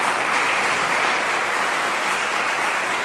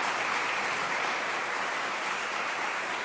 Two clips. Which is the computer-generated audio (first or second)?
second